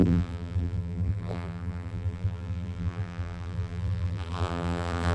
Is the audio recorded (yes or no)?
no